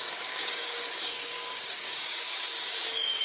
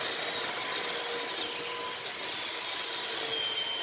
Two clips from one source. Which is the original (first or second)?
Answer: second